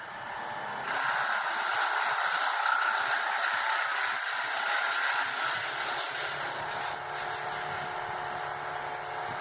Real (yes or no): yes